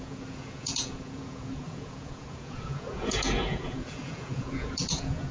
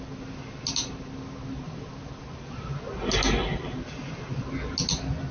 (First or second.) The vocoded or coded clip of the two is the first